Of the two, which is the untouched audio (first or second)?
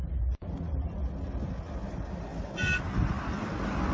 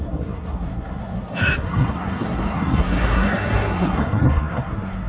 first